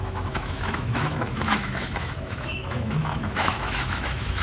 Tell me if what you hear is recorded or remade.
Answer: remade